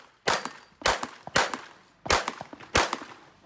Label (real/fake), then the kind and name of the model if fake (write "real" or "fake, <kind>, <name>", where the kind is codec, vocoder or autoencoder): real